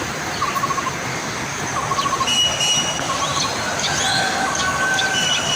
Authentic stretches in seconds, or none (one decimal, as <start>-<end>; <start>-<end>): 0.0-1.1; 1.6-4.1; 5.0-5.6

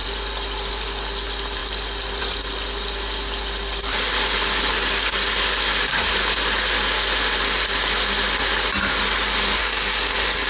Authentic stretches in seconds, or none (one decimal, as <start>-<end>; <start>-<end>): 0.0-9.6

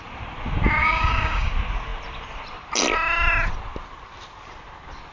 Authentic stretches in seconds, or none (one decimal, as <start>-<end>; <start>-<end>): 0.0-0.8; 1.5-5.1

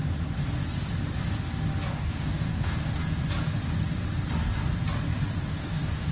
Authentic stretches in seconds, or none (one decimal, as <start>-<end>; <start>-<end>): 0.0-1.9; 3.0-5.4

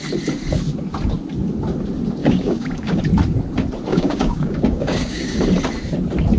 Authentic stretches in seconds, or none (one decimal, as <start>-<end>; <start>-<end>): 0.0-2.2; 3.0-3.9; 5.4-6.4

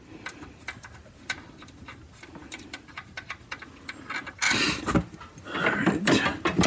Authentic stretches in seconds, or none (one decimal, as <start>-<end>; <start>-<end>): 0.0-6.7